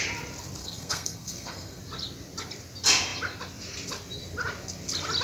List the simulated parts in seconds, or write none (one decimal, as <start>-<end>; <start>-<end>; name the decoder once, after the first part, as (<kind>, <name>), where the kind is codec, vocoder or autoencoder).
0.6-1.8 (codec, SNAC)